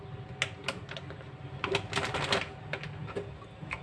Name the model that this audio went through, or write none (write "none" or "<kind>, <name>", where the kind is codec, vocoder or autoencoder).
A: none